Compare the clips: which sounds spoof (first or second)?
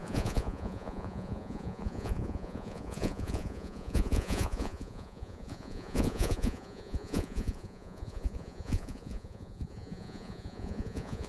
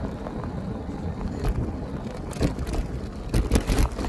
first